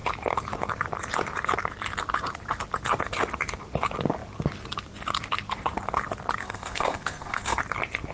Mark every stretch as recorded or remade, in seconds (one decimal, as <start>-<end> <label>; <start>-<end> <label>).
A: 0.0-6.4 recorded; 6.4-7.6 remade; 7.6-8.1 recorded